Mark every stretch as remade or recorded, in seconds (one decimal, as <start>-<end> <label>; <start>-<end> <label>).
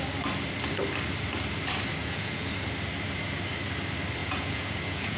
0.0-2.0 recorded; 2.0-2.5 remade; 2.5-4.2 recorded; 4.2-5.2 remade